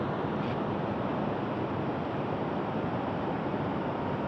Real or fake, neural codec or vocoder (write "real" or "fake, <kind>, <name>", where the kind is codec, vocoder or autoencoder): real